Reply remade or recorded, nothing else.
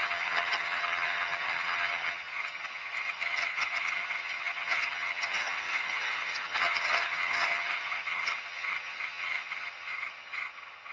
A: remade